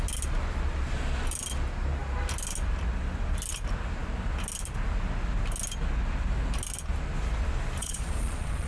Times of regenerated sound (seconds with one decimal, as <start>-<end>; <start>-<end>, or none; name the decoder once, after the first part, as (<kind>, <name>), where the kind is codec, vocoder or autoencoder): 7.8-8.7 (vocoder, Vocos)